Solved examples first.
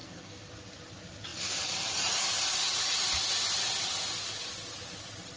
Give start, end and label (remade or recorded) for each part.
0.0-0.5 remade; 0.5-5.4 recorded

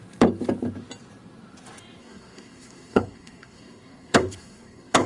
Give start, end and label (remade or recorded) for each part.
0.0-2.0 recorded; 2.0-5.1 remade

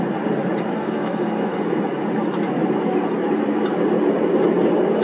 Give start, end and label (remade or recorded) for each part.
0.0-0.7 recorded; 0.7-1.8 remade; 1.8-5.0 recorded

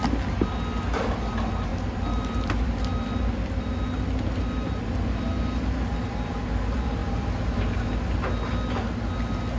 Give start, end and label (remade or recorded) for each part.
0.0-9.6 recorded

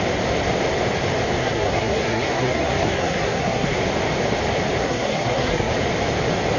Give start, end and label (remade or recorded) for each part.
0.0-1.4 recorded; 1.4-3.8 remade; 3.8-4.8 recorded; 4.8-5.7 remade; 5.7-6.6 recorded